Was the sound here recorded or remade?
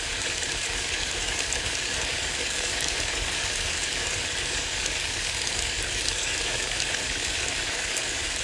remade